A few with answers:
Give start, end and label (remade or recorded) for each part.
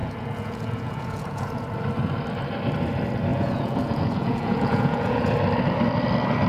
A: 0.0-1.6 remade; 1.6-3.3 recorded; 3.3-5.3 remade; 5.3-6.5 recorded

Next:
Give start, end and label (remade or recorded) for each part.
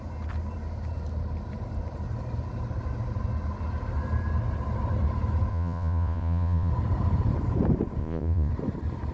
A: 0.0-5.5 recorded; 5.5-6.7 remade; 6.7-8.0 recorded; 8.0-8.5 remade; 8.5-9.1 recorded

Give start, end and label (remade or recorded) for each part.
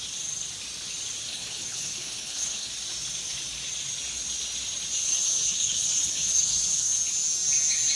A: 0.0-1.3 recorded; 1.3-2.7 remade; 2.7-5.0 recorded; 5.0-7.0 remade; 7.0-8.0 recorded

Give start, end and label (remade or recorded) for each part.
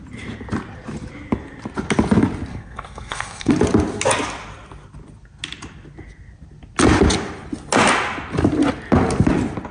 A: 0.0-2.5 recorded; 2.5-3.5 remade; 3.5-9.7 recorded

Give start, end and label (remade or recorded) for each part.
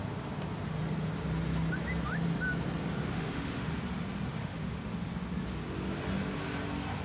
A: 0.0-3.1 recorded; 3.1-3.7 remade; 3.7-4.4 recorded; 4.4-4.9 remade; 4.9-7.0 recorded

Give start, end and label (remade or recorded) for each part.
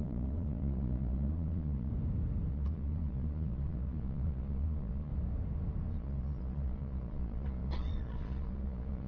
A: 0.0-1.9 remade; 1.9-2.5 recorded; 2.5-5.1 remade; 5.1-5.9 recorded; 5.9-9.1 remade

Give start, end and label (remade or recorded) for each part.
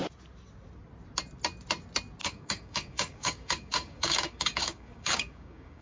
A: 0.0-2.2 recorded; 2.2-5.8 remade